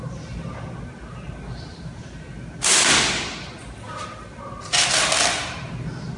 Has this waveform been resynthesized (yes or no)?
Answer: no